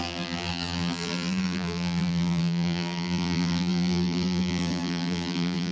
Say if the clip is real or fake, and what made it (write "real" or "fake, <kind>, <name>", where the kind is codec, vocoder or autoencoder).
fake, vocoder, BigVGAN v2